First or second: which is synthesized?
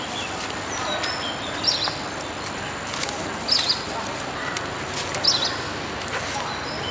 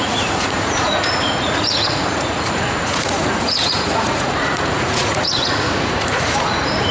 second